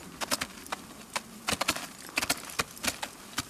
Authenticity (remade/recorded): recorded